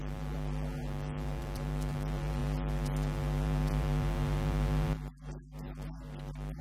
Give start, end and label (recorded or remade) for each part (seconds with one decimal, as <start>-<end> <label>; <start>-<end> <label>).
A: 0.0-6.6 remade

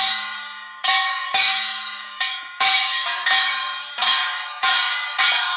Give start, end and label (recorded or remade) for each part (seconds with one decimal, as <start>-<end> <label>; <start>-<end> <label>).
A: 0.0-5.6 remade

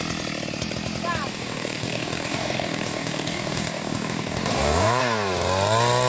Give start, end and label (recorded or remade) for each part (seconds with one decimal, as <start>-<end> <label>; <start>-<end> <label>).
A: 0.0-1.3 recorded; 1.3-5.0 remade; 5.0-6.1 recorded

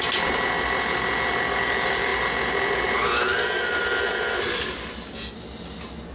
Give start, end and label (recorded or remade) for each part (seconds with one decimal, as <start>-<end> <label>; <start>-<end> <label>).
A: 0.0-6.1 recorded

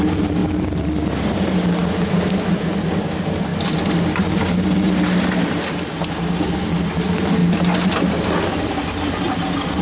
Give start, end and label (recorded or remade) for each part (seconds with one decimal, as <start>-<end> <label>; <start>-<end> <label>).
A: 0.0-9.8 recorded

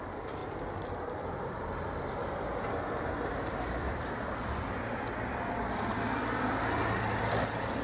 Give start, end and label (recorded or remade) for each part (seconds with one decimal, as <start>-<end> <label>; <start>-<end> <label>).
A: 0.0-0.4 recorded; 0.4-1.7 remade; 1.7-7.8 recorded

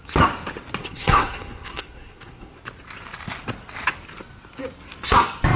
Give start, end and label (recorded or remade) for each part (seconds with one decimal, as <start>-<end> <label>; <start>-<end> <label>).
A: 0.0-0.8 recorded; 0.8-2.6 remade; 2.6-5.6 recorded